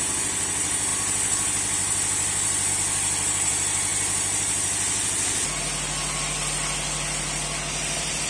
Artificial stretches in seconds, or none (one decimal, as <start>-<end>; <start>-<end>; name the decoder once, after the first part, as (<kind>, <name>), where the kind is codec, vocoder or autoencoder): none